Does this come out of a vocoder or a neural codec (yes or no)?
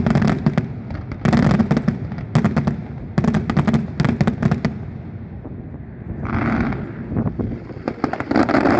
no